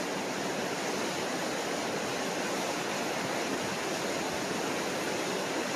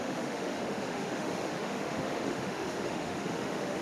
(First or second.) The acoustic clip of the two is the first